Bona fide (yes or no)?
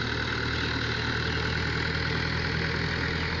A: yes